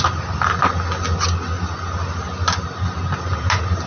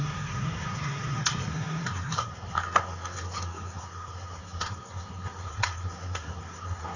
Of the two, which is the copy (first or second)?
second